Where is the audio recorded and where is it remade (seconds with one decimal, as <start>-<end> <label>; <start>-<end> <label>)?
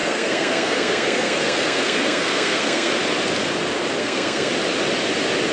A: 0.0-2.9 remade; 2.9-4.0 recorded; 4.0-4.5 remade; 4.5-5.5 recorded